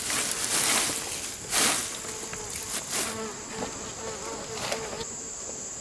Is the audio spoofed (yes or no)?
no